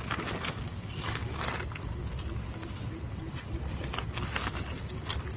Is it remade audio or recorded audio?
recorded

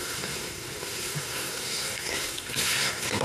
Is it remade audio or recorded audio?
remade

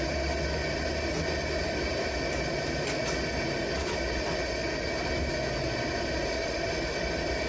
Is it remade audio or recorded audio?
recorded